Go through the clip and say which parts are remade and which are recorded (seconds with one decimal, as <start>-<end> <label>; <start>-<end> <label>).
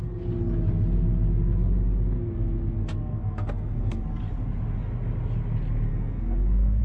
0.0-3.1 recorded; 3.1-4.0 remade; 4.0-5.9 recorded; 5.9-6.8 remade